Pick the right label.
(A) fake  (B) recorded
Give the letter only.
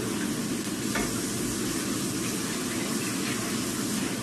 B